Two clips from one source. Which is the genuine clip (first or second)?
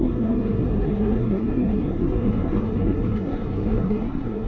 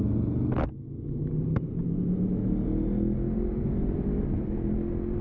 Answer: second